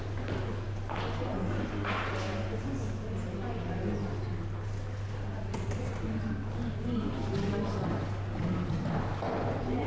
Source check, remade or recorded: recorded